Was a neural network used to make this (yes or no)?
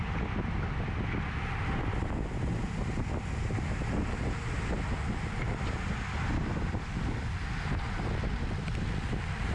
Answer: no